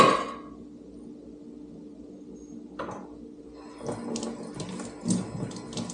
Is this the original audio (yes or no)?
yes